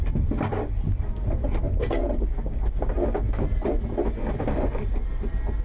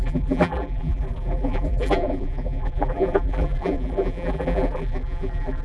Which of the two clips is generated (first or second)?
second